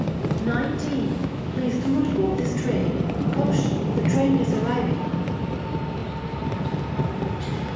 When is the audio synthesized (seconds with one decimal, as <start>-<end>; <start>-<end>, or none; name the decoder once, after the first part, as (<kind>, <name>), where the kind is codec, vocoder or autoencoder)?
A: 1.2-2.4 (autoencoder, DAC-VAE)